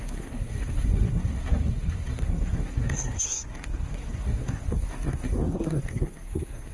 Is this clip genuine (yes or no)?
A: no